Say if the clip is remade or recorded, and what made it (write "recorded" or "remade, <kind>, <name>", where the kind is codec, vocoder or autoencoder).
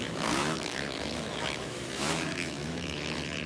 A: remade, autoencoder, DAC-VAE